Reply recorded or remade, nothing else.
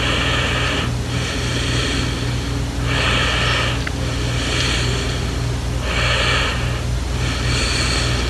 recorded